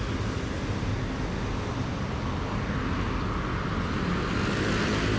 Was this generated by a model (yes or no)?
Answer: no